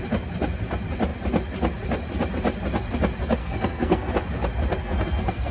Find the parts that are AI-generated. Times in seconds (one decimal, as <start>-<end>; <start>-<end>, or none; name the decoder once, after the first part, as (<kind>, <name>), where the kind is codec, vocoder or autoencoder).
3.4-4.1 (codec, SNAC); 4.8-5.5